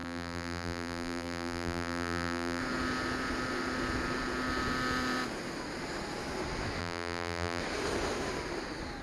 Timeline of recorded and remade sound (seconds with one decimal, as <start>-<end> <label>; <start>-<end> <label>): 0.0-2.6 remade; 2.6-6.8 recorded; 6.8-7.6 remade; 7.6-9.0 recorded